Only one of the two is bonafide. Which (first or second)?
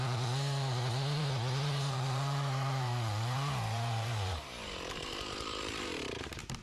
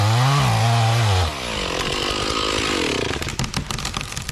second